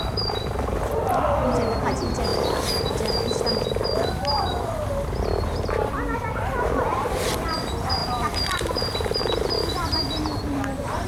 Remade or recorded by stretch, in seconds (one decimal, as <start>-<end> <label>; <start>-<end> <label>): 0.0-11.1 remade